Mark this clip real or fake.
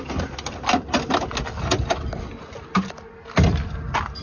real